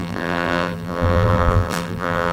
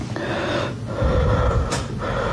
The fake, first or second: first